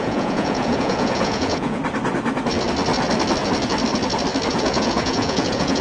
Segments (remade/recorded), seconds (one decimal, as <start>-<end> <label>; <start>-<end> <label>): 0.0-1.8 remade; 1.8-4.5 recorded; 4.5-5.8 remade

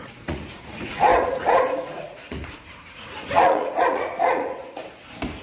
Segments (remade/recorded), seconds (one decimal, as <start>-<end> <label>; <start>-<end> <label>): 0.0-4.8 remade; 4.8-5.4 recorded

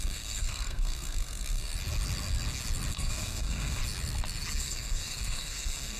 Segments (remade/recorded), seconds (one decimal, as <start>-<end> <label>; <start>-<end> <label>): 0.0-1.7 remade; 1.7-2.9 recorded; 2.9-3.8 remade; 3.8-4.6 recorded; 4.6-6.0 remade